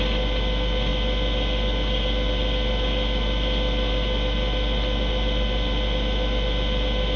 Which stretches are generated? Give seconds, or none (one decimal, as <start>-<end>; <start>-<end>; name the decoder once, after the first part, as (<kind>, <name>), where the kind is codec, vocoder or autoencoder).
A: none